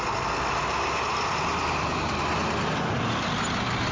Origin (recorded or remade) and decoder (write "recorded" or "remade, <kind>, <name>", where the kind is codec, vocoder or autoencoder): recorded